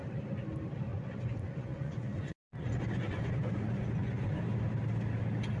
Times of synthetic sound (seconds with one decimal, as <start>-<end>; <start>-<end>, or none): 0.9-4.3

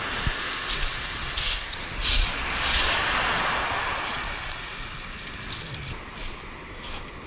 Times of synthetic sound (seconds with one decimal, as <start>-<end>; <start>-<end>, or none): 1.2-4.6

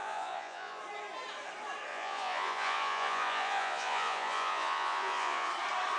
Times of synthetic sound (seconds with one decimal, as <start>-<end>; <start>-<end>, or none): 0.0-0.8; 1.9-5.5

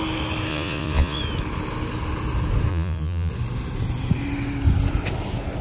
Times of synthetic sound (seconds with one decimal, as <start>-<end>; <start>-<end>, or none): 0.5-1.2; 2.7-3.3

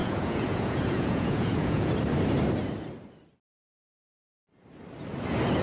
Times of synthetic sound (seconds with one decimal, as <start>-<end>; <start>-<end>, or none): 0.0-1.9